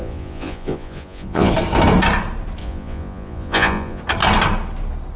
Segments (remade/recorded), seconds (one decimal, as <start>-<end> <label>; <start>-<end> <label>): 0.0-1.5 remade; 1.5-2.6 recorded; 2.6-4.0 remade; 4.0-5.2 recorded